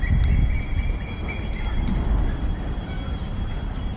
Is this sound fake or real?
real